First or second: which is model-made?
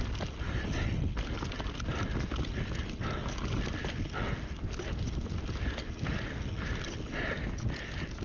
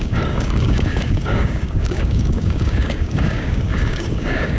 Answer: second